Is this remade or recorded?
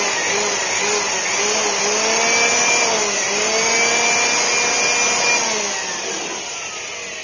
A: recorded